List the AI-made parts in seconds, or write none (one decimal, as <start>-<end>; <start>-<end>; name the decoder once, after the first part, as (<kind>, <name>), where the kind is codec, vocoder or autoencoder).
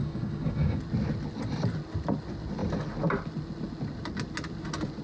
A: 0.0-0.8 (codec, DAC)